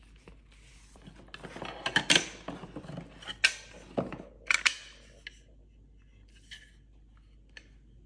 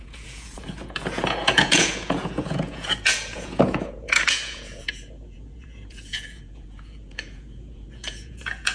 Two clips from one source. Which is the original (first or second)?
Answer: first